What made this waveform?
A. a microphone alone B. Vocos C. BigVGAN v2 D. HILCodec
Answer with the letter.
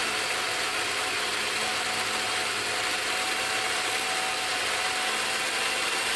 A